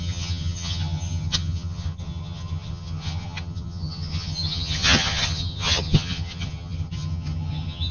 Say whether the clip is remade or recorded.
remade